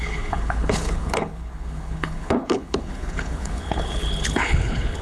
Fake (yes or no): yes